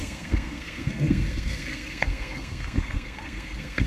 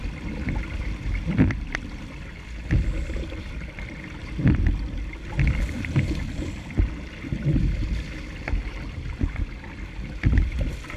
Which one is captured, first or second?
second